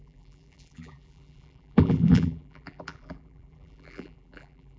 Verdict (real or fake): fake